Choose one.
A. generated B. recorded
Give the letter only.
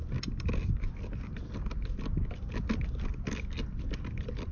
B